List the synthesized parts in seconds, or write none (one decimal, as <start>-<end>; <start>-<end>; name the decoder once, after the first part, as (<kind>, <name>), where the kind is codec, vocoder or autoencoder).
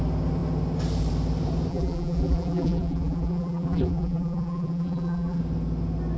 1.7-5.4 (vocoder, BigVGAN v2)